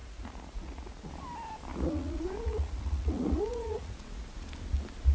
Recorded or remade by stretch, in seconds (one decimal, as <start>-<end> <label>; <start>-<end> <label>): 0.0-1.1 remade; 1.1-1.7 recorded; 1.7-4.5 remade; 4.5-5.1 recorded